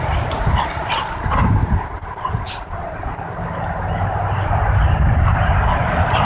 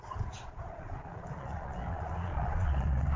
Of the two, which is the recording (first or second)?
first